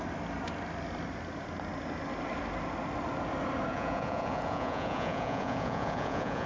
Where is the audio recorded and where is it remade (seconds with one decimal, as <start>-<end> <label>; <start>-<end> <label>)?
0.0-3.7 recorded; 3.7-6.5 remade